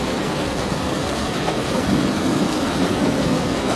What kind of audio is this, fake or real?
fake